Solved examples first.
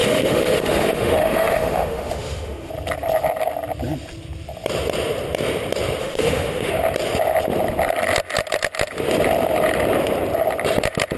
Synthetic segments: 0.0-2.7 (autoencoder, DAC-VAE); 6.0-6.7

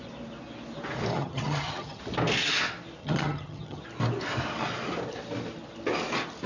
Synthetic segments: 1.1-2.0 (vocoder, HiFi-GAN); 3.0-3.8